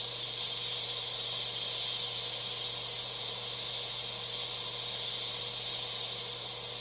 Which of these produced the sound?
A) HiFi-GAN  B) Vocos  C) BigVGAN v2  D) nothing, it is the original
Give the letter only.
D